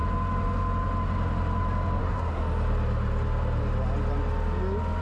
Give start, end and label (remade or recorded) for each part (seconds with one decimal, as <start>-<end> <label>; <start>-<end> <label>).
0.0-2.0 recorded; 2.0-2.4 remade; 2.4-5.0 recorded